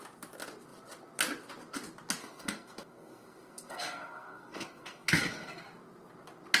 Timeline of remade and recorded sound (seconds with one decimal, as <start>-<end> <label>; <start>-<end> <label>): 0.0-2.2 recorded; 2.2-5.6 remade; 5.6-6.6 recorded